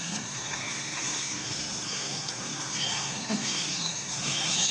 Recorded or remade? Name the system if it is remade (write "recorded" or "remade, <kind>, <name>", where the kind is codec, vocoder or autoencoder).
remade, codec, SNAC